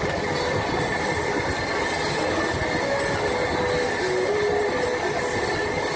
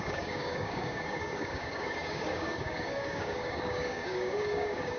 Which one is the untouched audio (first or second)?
first